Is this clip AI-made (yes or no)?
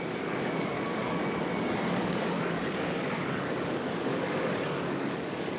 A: yes